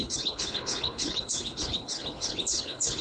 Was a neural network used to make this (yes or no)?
yes